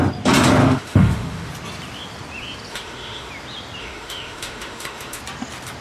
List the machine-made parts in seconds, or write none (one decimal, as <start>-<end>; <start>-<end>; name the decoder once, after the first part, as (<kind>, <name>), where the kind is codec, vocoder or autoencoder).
0.6-1.5 (autoencoder, DAC-VAE); 2.7-3.3; 3.8-5.2